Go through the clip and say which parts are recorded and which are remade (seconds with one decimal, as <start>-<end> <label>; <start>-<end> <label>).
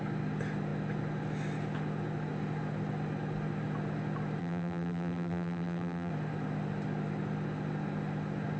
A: 0.0-4.4 recorded; 4.4-6.1 remade; 6.1-8.6 recorded